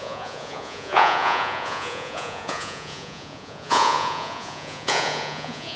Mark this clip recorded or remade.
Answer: remade